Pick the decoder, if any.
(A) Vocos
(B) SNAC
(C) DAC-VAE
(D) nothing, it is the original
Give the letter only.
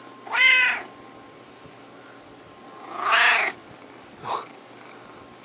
D